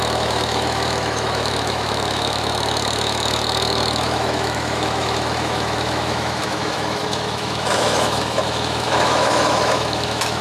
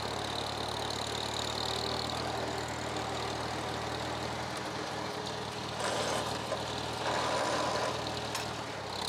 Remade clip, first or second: first